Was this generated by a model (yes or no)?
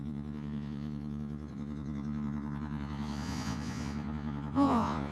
yes